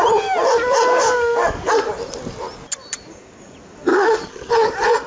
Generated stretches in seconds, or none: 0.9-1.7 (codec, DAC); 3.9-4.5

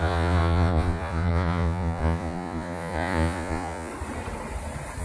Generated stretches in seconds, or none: 0.0-3.9 (vocoder, Vocos)

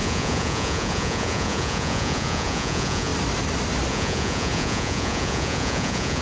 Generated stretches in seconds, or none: 0.0-3.1 (vocoder, Vocos); 3.9-6.2

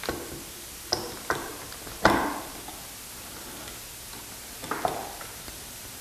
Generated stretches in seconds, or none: 0.0-1.5 (vocoder, BigVGAN v2); 5.1-6.0